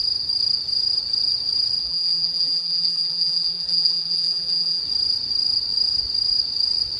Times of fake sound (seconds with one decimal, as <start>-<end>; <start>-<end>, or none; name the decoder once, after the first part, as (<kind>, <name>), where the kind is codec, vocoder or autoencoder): 1.8-4.8 (vocoder, BigVGAN v2)